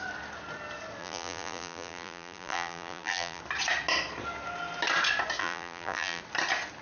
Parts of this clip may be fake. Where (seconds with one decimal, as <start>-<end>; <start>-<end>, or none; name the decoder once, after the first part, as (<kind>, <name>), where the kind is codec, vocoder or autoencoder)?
1.0-3.4 (vocoder, BigVGAN v2); 5.4-6.2